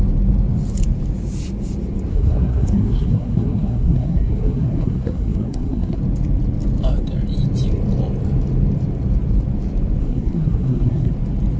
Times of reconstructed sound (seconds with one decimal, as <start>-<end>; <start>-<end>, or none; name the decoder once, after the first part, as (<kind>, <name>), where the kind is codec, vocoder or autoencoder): 2.1-6.0 (codec, SNAC); 10.0-11.1